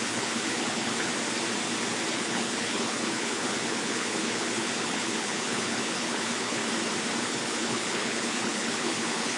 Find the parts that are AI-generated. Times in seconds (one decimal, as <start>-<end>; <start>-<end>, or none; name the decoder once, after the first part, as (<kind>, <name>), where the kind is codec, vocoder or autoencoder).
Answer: 0.0-1.1 (codec, HILCodec); 2.1-6.6; 7.2-9.4